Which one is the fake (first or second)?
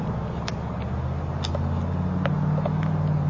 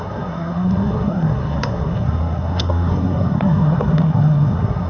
second